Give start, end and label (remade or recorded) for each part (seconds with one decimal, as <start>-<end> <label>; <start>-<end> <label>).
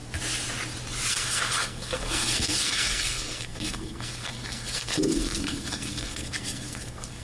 0.0-1.1 recorded; 1.1-7.2 remade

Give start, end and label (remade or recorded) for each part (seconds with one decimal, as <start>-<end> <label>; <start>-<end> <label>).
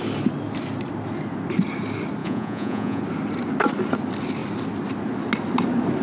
0.0-2.2 recorded; 2.2-3.0 remade; 3.0-6.0 recorded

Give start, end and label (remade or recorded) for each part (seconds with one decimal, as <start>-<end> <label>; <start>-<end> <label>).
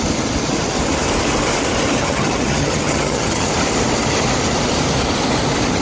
0.0-2.0 recorded; 2.0-3.5 remade; 3.5-5.8 recorded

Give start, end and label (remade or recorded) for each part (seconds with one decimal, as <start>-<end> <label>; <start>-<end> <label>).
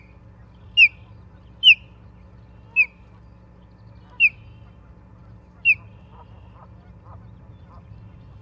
0.0-8.4 recorded